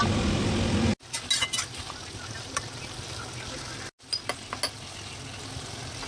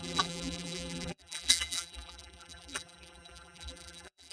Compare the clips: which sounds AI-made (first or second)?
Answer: second